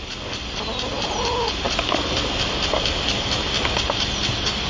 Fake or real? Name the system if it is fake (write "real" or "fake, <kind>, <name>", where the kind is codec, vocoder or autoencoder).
real